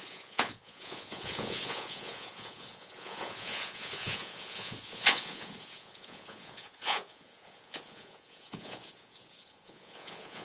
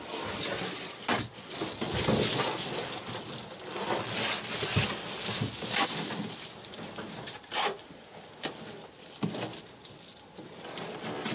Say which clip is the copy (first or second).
first